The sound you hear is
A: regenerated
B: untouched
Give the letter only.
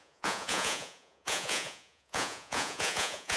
A